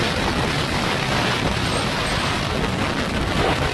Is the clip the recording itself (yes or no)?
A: yes